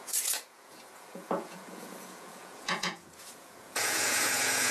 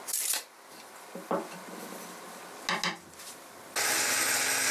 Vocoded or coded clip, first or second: first